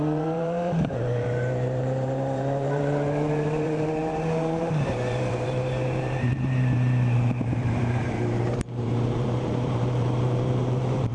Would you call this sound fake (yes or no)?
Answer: yes